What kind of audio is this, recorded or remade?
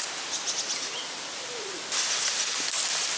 recorded